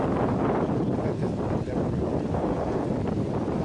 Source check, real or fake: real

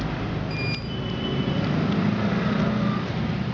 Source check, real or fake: real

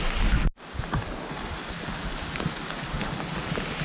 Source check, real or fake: real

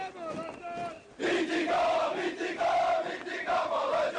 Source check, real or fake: real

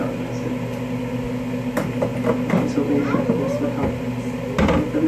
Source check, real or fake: real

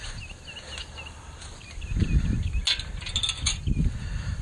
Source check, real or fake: real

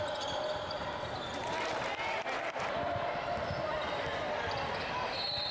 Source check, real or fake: real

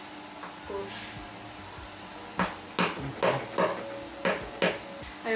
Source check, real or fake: real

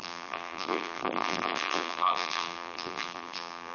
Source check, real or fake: fake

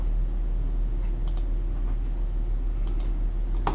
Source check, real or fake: real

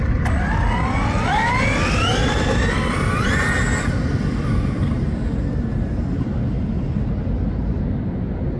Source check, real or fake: real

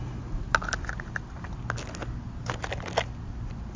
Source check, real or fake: real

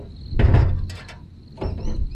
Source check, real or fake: real